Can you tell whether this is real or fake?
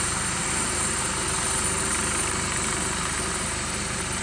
fake